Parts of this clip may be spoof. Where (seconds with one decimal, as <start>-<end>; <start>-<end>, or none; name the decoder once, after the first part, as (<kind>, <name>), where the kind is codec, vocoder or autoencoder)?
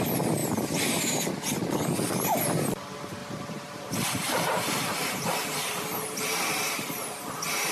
0.4-1.0 (vocoder, BigVGAN v2); 3.2-7.7